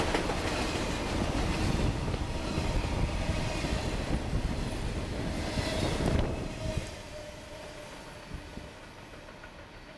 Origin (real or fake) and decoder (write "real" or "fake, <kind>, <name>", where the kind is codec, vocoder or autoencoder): real